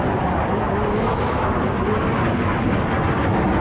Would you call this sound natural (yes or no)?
yes